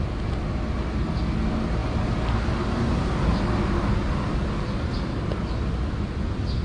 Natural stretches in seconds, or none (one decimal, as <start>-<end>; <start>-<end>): 0.0-6.6